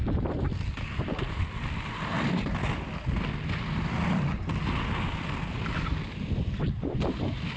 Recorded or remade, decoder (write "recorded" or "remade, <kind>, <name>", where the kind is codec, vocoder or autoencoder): recorded